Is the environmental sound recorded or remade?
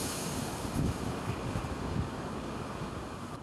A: remade